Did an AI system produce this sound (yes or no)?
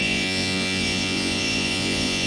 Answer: yes